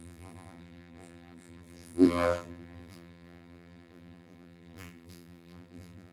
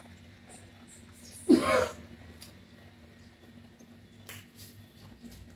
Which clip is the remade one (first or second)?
first